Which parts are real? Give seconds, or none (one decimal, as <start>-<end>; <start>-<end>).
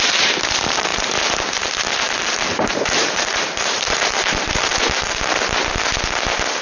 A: 4.7-6.6